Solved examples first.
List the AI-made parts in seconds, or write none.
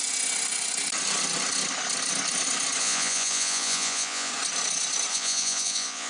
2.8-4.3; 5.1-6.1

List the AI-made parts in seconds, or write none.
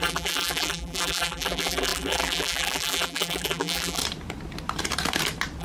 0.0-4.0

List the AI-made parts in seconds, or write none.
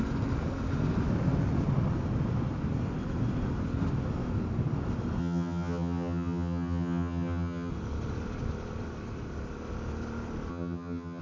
5.2-7.7; 10.5-11.2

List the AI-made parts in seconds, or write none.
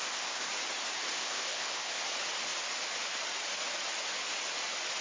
0.0-0.5; 1.1-2.0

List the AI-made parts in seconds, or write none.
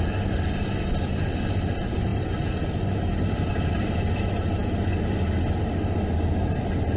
none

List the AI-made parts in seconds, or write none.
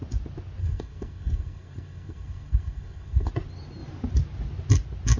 0.6-3.3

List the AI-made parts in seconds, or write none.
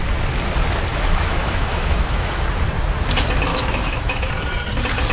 0.9-2.4; 3.5-4.3